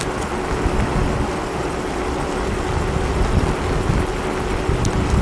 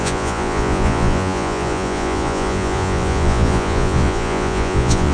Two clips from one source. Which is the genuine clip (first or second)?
first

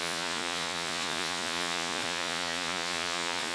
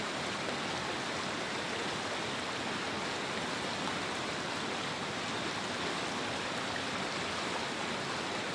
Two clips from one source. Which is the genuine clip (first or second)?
second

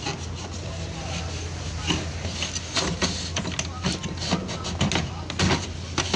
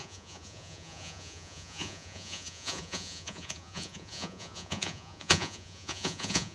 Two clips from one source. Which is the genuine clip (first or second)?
first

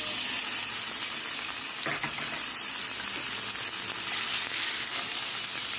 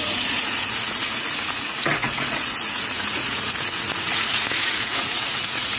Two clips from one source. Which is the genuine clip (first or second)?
first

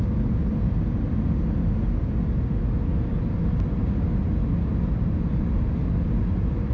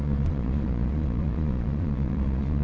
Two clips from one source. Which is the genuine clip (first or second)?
first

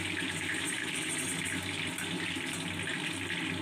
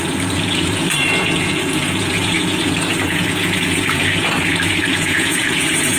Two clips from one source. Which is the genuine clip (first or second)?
first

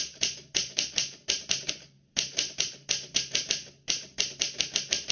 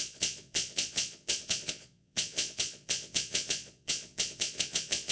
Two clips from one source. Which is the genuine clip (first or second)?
first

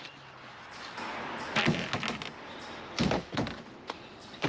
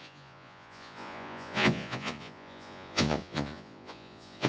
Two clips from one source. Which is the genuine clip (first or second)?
first